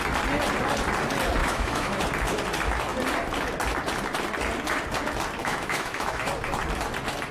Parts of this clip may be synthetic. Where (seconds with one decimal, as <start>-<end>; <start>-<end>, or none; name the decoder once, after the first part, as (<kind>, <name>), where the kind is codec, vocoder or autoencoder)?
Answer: 1.4-2.0 (autoencoder, DAC-VAE); 5.4-6.3